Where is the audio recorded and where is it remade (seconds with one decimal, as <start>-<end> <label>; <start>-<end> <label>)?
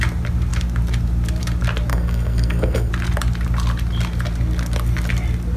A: 0.0-1.9 recorded; 1.9-2.9 remade; 2.9-5.6 recorded